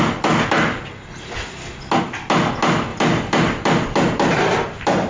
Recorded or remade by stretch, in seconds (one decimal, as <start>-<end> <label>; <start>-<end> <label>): 0.0-5.1 recorded